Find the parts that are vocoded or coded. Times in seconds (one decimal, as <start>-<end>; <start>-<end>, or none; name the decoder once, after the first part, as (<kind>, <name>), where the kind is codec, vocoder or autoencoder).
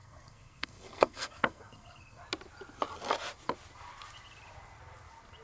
0.0-2.2 (codec, SNAC)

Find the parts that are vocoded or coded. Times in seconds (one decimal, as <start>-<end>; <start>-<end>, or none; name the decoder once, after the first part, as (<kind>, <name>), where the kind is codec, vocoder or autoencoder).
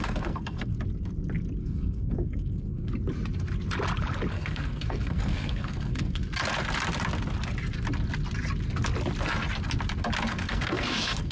0.0-0.7 (codec, SNAC); 1.6-2.9; 4.3-6.2; 10.3-11.3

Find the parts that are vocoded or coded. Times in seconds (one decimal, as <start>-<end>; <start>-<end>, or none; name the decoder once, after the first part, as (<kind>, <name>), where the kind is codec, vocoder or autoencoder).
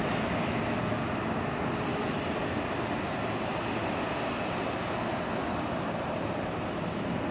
none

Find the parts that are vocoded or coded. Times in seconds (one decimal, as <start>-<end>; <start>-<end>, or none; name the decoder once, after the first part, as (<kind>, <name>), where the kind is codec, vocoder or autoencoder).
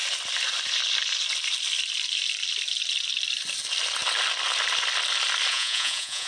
5.5-6.3 (vocoder, Vocos)